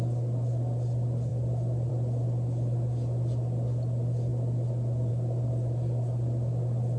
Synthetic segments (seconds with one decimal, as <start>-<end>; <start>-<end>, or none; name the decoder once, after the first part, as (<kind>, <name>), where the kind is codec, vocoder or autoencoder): none

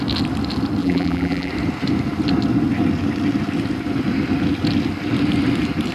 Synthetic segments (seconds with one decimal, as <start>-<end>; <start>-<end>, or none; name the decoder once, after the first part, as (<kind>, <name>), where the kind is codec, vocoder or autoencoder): 0.8-1.5 (vocoder, BigVGAN v2)

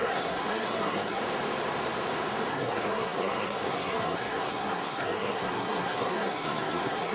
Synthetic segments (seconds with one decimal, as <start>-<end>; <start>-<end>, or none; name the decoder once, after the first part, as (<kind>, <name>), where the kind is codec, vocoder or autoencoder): 0.0-1.2 (codec, SNAC); 2.5-7.1

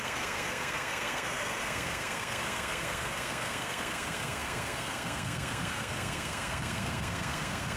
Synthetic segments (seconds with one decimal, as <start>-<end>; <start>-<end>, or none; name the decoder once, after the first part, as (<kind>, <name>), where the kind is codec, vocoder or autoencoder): 0.0-7.8 (codec, SNAC)

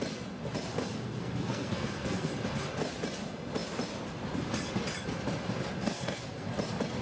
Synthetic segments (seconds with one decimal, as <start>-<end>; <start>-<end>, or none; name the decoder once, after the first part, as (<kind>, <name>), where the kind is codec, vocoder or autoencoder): 0.7-2.3 (codec, SNAC); 5.8-6.5